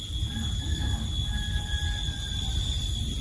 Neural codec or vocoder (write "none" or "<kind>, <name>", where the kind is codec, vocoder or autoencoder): vocoder, BigVGAN v2